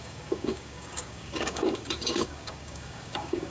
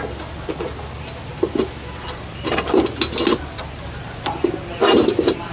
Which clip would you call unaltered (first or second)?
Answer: second